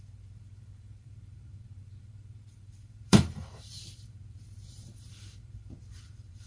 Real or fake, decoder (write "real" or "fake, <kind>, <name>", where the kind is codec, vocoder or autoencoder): fake, vocoder, BigVGAN v2